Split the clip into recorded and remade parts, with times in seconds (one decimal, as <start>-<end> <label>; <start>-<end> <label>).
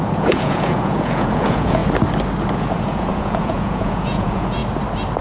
0.0-1.8 remade; 1.8-2.5 recorded; 2.5-4.6 remade; 4.6-5.2 recorded